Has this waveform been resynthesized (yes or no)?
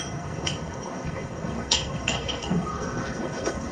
yes